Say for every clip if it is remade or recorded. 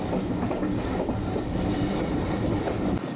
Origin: recorded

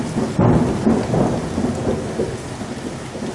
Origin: recorded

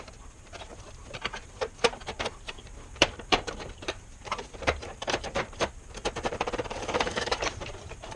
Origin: remade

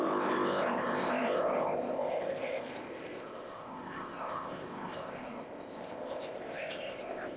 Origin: remade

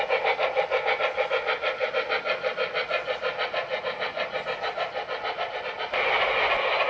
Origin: recorded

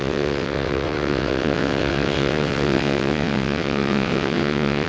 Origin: remade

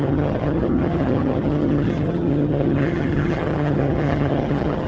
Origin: remade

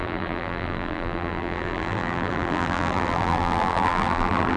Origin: remade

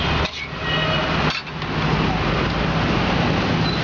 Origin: recorded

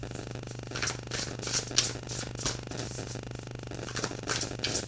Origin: recorded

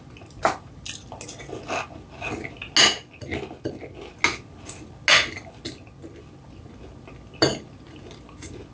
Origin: recorded